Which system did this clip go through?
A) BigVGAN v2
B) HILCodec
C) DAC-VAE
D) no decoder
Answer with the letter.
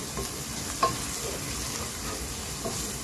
D